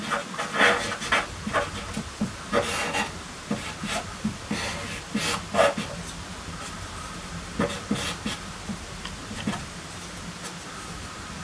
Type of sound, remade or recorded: recorded